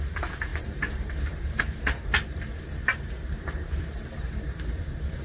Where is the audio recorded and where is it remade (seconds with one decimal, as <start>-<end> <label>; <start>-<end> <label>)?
0.0-5.2 remade